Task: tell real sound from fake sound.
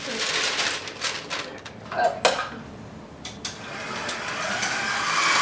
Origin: real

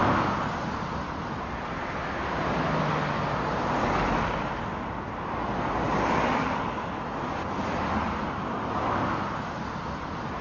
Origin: real